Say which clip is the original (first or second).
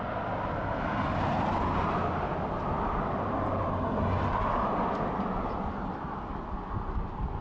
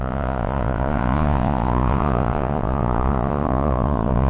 first